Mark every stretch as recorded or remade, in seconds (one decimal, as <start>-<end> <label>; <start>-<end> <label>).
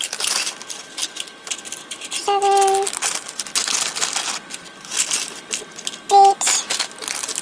0.0-7.4 recorded